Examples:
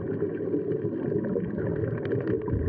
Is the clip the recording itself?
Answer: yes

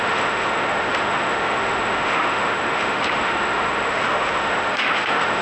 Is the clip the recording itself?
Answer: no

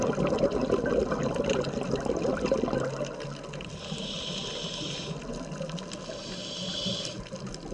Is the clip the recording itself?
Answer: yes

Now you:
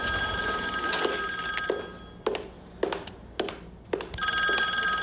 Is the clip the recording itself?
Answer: yes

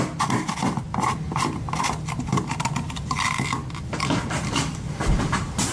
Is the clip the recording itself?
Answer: yes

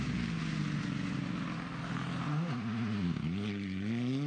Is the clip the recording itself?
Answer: yes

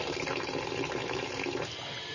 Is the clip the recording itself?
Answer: yes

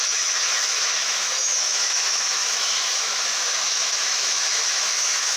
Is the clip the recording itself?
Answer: no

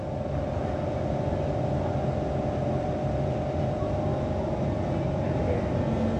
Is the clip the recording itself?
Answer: yes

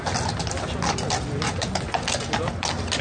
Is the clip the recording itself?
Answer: yes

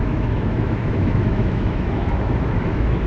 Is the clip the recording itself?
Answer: no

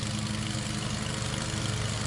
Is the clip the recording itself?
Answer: yes